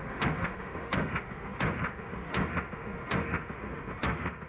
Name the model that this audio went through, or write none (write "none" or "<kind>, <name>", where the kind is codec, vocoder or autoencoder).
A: autoencoder, DAC-VAE